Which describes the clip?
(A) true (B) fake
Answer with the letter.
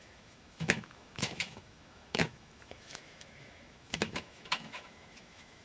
B